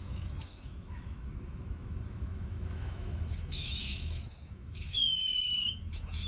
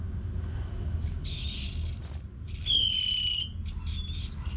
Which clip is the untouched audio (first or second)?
second